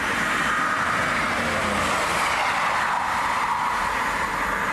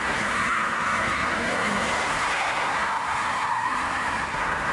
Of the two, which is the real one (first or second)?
first